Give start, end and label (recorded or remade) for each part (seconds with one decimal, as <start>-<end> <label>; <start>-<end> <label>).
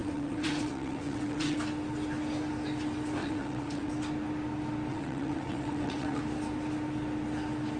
0.0-1.6 remade; 1.6-3.2 recorded; 3.2-3.9 remade; 3.9-4.9 recorded; 4.9-6.2 remade; 6.2-7.8 recorded